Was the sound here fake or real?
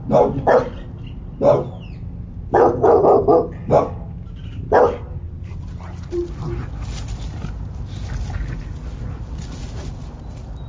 real